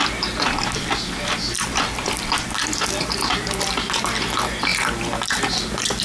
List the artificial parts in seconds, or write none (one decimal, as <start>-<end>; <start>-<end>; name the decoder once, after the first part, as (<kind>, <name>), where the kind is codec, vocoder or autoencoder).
none